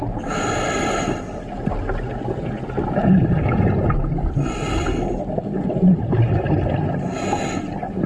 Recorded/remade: recorded